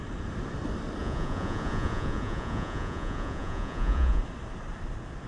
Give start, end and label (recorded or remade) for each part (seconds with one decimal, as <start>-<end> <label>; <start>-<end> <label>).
0.0-1.0 recorded; 1.0-4.2 remade; 4.2-5.3 recorded